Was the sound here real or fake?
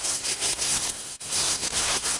fake